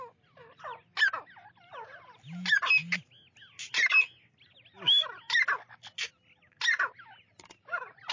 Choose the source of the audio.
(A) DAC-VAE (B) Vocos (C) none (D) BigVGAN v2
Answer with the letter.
C